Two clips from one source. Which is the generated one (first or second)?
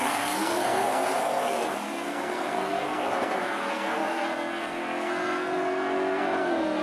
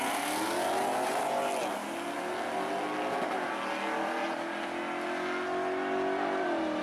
first